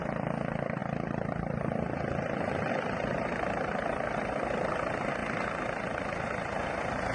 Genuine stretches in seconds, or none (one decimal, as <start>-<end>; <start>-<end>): 5.2-6.1